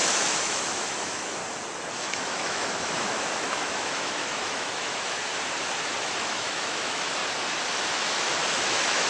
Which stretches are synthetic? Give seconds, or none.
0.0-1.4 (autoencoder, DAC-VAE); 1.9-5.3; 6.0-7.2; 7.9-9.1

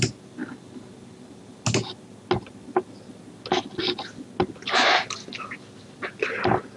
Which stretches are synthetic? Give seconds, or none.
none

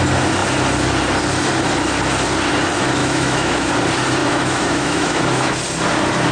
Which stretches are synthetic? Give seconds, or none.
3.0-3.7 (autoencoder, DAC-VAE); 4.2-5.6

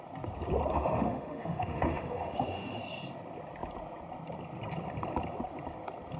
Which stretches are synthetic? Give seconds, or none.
0.7-2.8 (autoencoder, DAC-VAE)